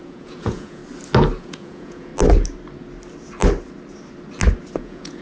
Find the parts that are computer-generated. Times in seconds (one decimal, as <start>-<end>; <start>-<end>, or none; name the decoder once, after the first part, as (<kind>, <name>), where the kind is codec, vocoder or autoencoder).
0.0-0.8 (vocoder, Vocos); 1.4-2.1; 4.8-5.2